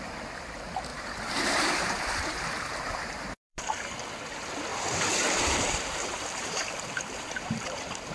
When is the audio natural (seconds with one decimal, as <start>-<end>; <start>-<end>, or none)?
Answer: 0.0-0.9; 3.6-4.7